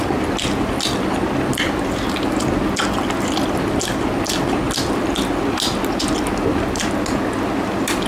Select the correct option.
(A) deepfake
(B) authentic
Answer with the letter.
B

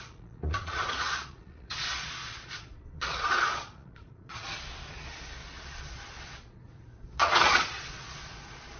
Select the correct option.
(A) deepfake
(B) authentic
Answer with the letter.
A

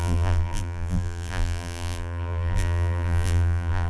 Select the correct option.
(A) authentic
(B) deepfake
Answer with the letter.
B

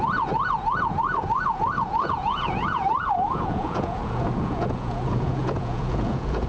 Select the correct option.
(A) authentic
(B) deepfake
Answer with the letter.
B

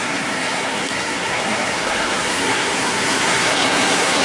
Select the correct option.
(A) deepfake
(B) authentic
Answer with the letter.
A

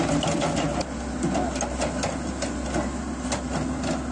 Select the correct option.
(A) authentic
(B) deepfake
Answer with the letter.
A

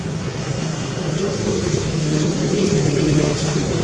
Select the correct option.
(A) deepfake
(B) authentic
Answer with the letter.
A